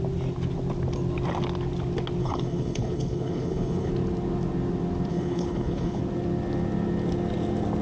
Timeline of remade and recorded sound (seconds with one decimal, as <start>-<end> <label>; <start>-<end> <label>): 0.0-2.2 recorded; 2.2-3.9 remade; 3.9-5.1 recorded; 5.1-6.0 remade; 6.0-7.8 recorded